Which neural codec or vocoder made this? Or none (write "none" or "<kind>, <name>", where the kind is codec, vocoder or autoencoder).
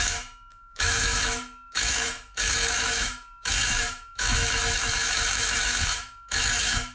autoencoder, DAC-VAE